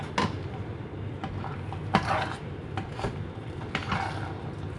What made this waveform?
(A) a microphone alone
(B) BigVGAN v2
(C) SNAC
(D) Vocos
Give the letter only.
A